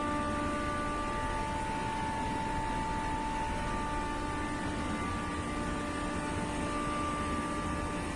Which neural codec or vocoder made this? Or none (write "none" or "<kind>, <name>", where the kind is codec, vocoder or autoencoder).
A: none